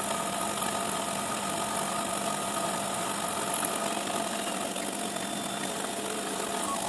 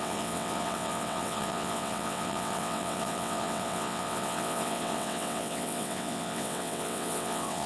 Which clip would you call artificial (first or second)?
second